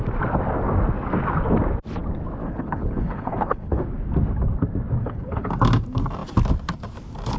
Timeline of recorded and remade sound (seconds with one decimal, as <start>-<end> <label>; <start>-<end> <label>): 0.0-2.4 recorded; 2.4-3.8 remade; 3.8-5.0 recorded; 5.0-5.5 remade; 5.5-7.4 recorded